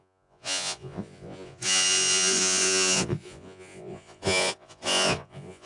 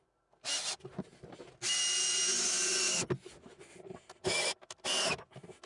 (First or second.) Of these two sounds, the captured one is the second